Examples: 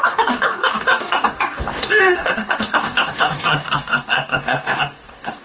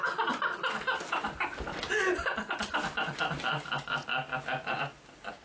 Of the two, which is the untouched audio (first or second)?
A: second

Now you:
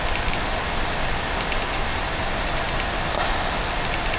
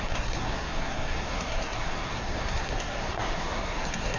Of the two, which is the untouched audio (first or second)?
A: first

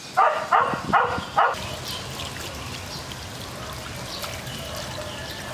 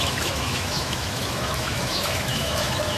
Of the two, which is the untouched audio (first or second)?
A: first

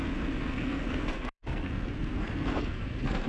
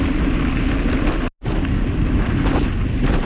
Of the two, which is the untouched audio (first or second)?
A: second